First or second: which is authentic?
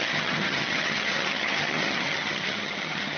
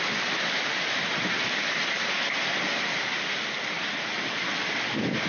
second